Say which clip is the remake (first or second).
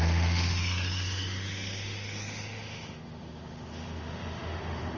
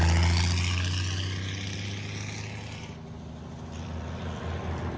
first